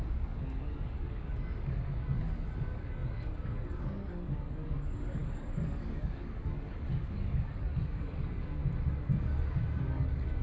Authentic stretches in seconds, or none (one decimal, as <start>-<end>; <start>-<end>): 8.6-9.9